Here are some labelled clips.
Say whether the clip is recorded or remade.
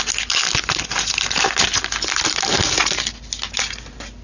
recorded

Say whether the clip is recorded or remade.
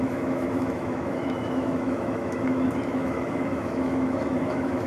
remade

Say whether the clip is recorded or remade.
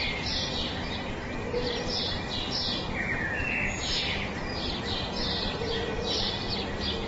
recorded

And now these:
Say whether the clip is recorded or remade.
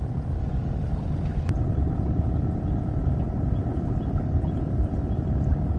recorded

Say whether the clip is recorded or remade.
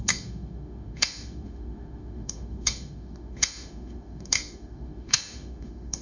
remade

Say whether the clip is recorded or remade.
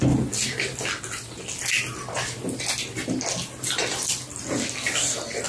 recorded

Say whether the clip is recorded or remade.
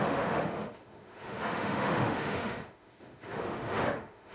remade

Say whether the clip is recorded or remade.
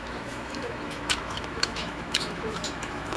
remade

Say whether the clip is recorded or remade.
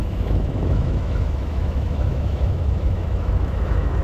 remade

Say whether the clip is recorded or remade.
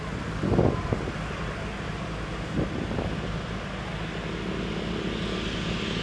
recorded